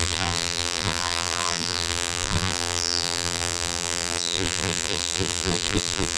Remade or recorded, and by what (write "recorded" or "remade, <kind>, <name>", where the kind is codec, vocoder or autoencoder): remade, vocoder, BigVGAN v2